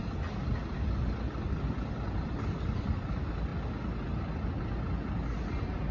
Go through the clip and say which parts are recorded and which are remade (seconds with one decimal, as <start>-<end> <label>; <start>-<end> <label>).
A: 0.0-5.9 recorded